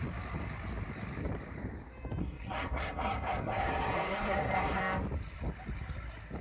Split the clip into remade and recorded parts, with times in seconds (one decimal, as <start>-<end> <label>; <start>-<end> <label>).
0.0-2.2 recorded; 2.2-4.8 remade; 4.8-6.4 recorded